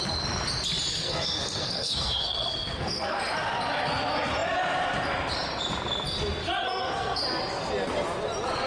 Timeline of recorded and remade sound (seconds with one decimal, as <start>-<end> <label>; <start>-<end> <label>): 0.0-0.9 recorded; 0.9-3.2 remade; 3.2-6.6 recorded; 6.6-7.2 remade; 7.2-8.7 recorded